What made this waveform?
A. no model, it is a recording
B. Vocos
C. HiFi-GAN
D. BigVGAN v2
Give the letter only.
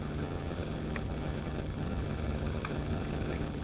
C